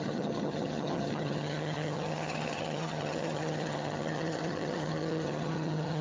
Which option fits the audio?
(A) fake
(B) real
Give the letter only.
A